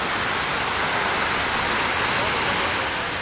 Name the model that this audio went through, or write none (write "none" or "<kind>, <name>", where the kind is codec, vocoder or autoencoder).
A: none